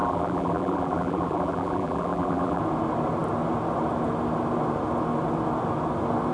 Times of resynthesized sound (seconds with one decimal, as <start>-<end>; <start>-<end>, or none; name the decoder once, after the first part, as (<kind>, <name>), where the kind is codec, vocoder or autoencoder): 0.0-2.6 (vocoder, BigVGAN v2)